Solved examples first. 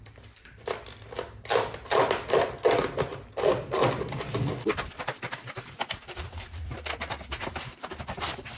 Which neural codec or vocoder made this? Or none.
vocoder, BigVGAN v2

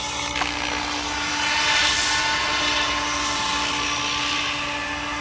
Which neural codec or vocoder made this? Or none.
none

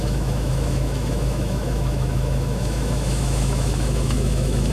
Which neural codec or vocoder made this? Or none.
autoencoder, DAC-VAE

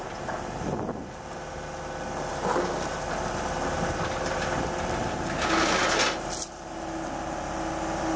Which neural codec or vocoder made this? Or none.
none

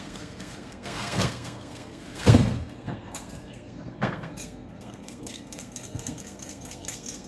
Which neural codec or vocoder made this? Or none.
codec, SNAC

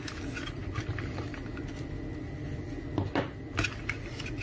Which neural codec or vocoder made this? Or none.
none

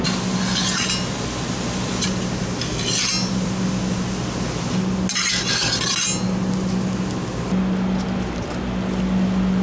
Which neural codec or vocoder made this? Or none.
none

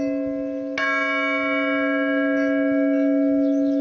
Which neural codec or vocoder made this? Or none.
none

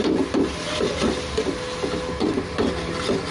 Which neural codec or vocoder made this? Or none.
none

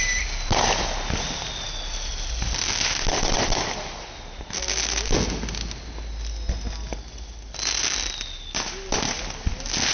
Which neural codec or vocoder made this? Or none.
none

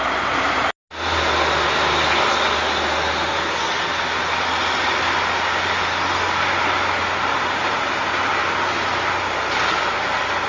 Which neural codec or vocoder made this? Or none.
none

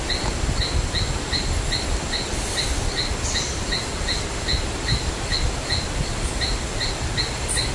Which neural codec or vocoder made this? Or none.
none